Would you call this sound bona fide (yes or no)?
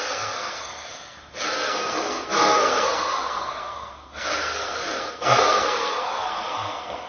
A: no